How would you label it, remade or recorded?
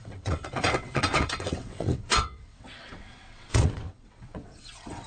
remade